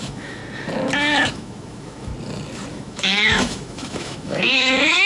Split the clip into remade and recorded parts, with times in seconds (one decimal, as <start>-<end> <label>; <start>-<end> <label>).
0.0-0.4 remade; 0.4-1.3 recorded; 1.3-2.1 remade; 2.1-2.7 recorded; 2.7-5.1 remade